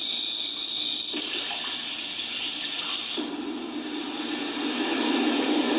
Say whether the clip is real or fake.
real